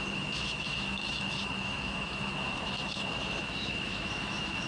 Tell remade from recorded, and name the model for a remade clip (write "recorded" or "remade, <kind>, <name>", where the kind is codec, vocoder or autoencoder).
remade, autoencoder, DAC-VAE